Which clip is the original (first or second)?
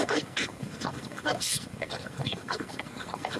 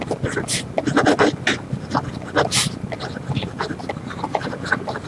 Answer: second